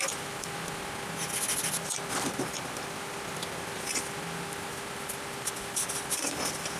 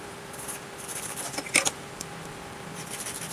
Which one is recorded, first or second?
first